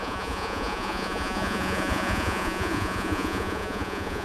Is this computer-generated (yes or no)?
yes